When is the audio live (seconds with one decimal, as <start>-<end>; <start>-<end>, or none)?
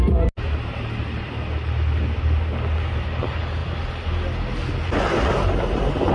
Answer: 0.0-6.1